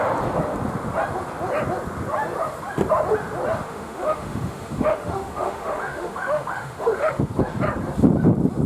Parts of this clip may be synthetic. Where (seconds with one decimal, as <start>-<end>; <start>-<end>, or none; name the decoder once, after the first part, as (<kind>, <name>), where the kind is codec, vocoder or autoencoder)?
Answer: 3.6-7.1 (autoencoder, DAC-VAE)